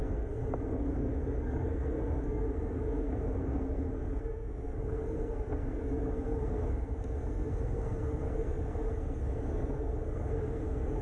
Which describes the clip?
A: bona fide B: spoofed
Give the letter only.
B